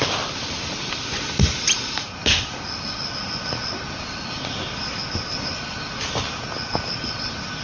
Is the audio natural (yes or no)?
yes